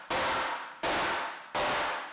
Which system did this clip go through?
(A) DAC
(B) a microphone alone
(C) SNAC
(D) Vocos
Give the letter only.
B